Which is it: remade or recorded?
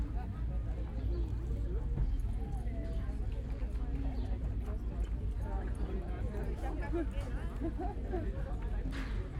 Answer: recorded